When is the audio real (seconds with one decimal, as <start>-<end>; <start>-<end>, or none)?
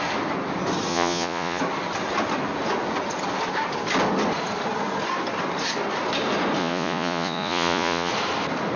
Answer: 0.0-0.9; 1.6-6.6; 8.1-8.8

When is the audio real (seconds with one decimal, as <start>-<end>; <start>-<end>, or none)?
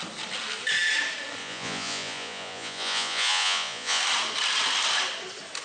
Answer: 0.0-1.4; 4.0-5.6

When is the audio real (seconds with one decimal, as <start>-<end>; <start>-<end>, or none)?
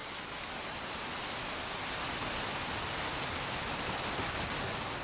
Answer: 0.0-5.0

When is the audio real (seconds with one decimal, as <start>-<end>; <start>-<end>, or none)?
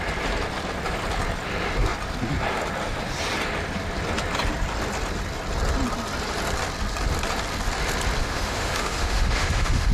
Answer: 0.0-8.2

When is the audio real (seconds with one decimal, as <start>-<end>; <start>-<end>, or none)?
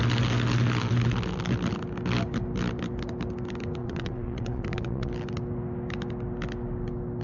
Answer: 0.0-3.8; 5.1-7.2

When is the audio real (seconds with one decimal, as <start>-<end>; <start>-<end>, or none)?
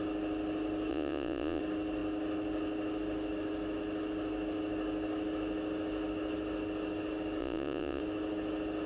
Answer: 0.0-0.9; 1.6-7.4; 8.0-8.9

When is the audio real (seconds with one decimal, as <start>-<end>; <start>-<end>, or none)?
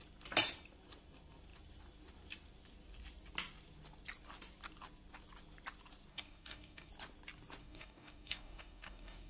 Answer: 0.0-6.1; 6.9-7.6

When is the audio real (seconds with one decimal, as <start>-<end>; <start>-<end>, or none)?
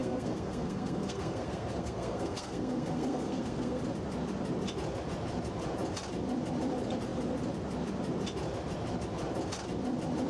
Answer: 3.8-10.3